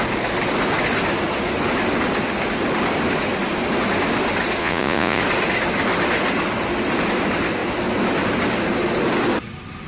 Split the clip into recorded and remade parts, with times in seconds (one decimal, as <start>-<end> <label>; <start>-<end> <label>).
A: 0.0-4.6 recorded; 4.6-5.2 remade; 5.2-9.9 recorded